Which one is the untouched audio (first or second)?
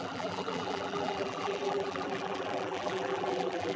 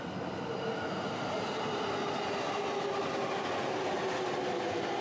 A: second